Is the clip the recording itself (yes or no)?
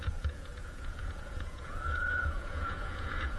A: no